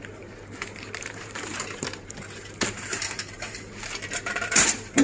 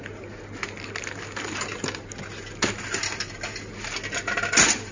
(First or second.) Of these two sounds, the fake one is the first